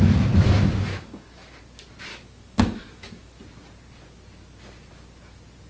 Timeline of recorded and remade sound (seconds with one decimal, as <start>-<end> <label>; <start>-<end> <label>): 0.0-0.9 recorded; 0.9-1.6 remade; 1.6-2.1 recorded; 2.1-3.4 remade; 3.4-5.7 recorded

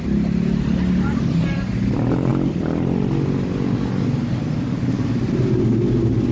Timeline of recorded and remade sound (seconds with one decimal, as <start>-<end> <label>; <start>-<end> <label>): 0.0-6.3 recorded

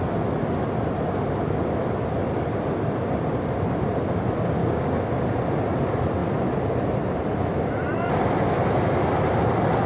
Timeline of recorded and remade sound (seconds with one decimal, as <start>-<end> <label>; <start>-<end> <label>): 0.0-4.6 recorded; 4.6-5.1 remade; 5.1-9.9 recorded

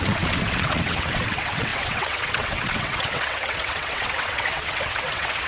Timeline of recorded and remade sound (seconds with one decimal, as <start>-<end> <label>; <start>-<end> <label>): 0.0-5.5 remade